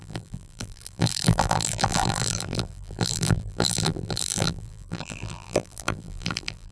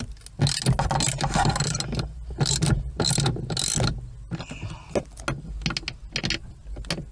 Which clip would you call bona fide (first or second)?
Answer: second